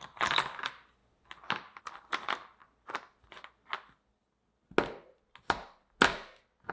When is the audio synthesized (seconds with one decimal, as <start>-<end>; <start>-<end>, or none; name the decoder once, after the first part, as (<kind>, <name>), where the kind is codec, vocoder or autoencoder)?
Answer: 0.0-1.0 (vocoder, BigVGAN v2); 1.8-2.6